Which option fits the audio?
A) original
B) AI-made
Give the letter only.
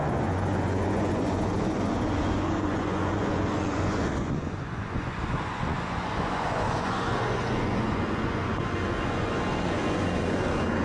B